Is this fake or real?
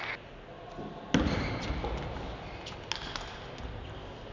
real